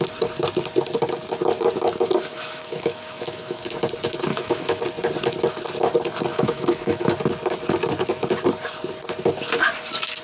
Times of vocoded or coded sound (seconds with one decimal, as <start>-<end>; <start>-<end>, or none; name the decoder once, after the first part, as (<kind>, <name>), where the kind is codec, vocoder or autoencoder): 2.3-3.6 (autoencoder, DAC-VAE); 4.3-4.8; 6.3-7.1